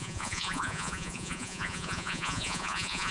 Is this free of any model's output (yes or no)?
no